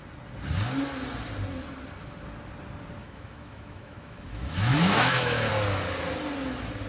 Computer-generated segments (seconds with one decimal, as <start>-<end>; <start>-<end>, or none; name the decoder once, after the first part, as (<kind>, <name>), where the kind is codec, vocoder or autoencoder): 3.0-5.5 (autoencoder, DAC-VAE)